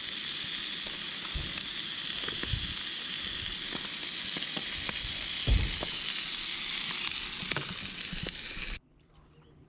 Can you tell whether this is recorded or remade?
recorded